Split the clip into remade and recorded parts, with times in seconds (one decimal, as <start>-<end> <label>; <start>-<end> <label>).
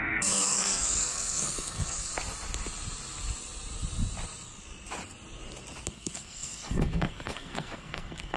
0.0-2.1 remade; 2.1-5.9 recorded; 5.9-8.4 remade